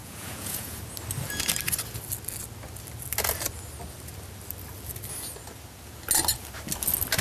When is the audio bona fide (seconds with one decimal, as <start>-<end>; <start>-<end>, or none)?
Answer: 0.8-7.2